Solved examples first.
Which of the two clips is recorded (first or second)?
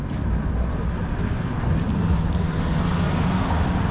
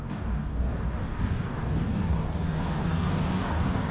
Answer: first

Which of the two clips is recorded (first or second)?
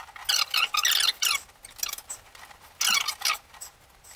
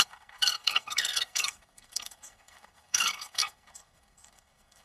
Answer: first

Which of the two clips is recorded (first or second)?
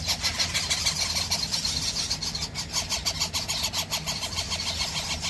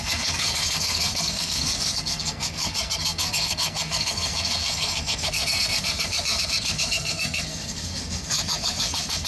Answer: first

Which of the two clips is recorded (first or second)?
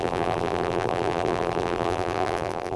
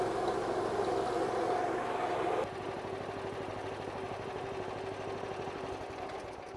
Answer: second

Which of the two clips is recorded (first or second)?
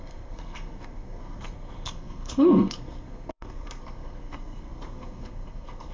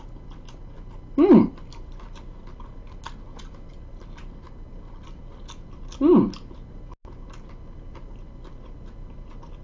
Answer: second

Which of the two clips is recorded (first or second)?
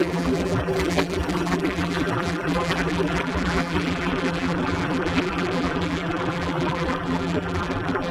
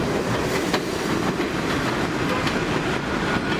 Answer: second